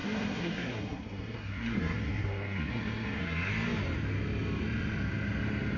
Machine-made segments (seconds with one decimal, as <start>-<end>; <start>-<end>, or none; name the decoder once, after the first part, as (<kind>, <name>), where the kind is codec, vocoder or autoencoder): 0.0-3.5 (codec, SNAC)